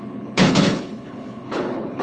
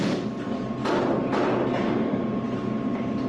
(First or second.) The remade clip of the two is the first